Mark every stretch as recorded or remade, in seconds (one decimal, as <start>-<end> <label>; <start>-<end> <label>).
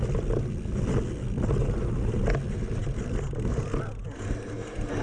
0.0-1.6 recorded; 1.6-2.2 remade; 2.2-5.0 recorded